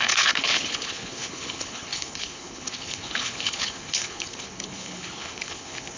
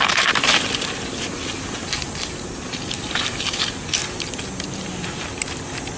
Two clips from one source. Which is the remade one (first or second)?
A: first